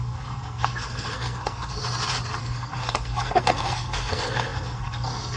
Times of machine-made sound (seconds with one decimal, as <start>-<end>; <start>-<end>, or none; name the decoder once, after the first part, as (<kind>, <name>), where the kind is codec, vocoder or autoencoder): 0.0-1.8 (codec, SNAC); 2.4-5.4